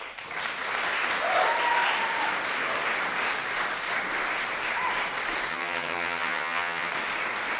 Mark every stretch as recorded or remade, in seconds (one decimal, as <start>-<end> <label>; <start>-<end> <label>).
0.0-5.5 recorded; 5.5-6.9 remade; 6.9-7.6 recorded